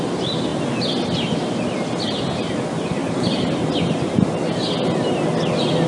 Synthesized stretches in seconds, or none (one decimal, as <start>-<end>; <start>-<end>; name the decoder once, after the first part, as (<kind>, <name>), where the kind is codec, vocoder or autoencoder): none